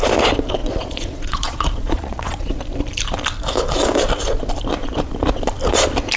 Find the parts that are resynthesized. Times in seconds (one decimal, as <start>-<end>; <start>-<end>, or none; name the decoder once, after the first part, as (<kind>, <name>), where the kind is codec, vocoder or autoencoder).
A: 0.6-2.5 (vocoder, Vocos)